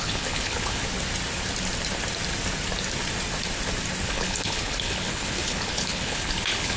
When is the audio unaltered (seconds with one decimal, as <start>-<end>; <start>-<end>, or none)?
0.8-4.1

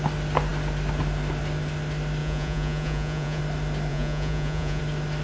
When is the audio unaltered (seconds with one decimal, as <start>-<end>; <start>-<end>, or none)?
0.0-2.2; 3.4-3.9; 4.8-5.2

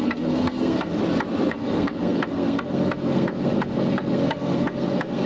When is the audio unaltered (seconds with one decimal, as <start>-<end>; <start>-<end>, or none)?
1.0-1.5

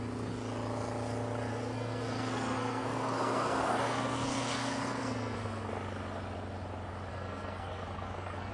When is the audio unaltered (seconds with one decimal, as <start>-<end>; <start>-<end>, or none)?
0.0-1.5; 5.7-7.1

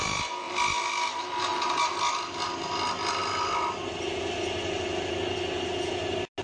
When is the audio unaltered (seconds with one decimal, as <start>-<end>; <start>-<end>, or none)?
0.0-6.4

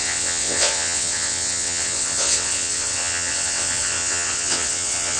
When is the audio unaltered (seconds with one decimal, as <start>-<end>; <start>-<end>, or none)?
none